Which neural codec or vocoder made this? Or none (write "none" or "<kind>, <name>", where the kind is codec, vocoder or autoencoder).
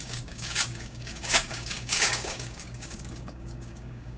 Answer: codec, DAC